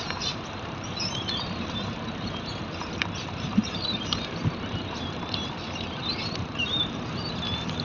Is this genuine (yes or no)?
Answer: no